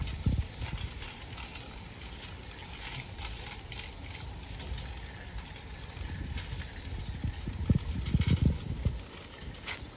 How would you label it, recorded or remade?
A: recorded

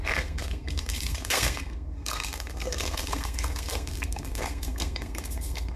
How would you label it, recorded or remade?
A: remade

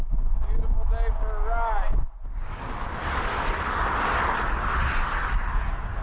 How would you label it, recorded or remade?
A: recorded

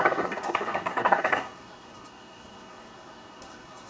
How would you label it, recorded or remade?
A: remade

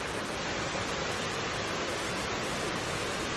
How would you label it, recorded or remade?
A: recorded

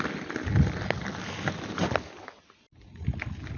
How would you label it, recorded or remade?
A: recorded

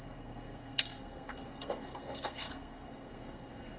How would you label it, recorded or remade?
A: remade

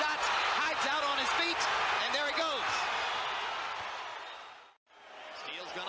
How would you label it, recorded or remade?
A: recorded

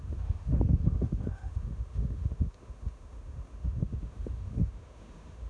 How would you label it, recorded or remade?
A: remade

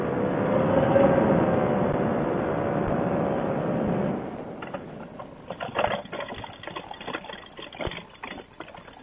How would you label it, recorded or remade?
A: recorded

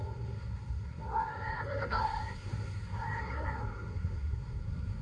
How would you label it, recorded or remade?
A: remade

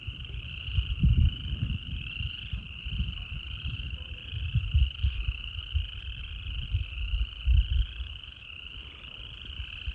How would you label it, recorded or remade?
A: recorded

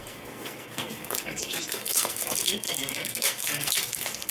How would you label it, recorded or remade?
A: remade